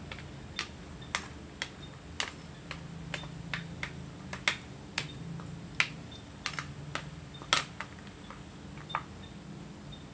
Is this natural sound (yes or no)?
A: yes